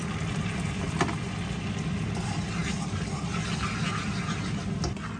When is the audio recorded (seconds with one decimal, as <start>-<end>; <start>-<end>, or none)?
0.0-5.2

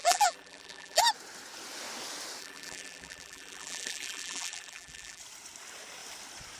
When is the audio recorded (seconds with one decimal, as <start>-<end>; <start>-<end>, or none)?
1.0-2.4; 5.2-6.6